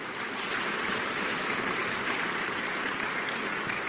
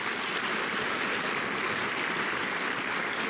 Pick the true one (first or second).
second